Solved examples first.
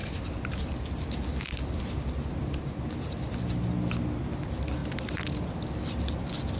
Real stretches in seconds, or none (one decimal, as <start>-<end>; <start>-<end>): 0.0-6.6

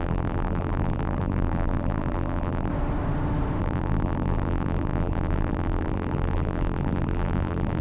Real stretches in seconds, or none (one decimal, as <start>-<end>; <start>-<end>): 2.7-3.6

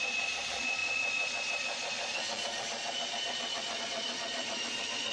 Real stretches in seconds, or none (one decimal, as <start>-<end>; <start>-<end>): none

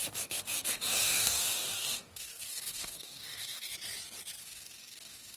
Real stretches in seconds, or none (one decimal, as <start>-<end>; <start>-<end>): 3.7-4.4

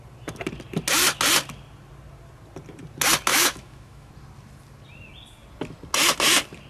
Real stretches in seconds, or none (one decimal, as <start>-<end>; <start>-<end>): 0.0-3.3; 4.1-6.7

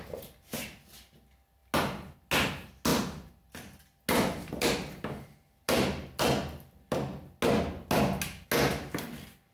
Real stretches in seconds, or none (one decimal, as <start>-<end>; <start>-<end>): 0.0-9.5